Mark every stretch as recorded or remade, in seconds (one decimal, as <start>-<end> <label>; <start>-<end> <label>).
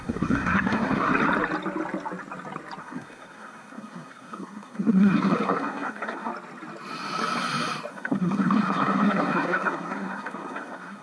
0.0-1.1 remade; 1.1-2.8 recorded; 2.8-6.3 remade; 6.3-7.9 recorded; 7.9-11.0 remade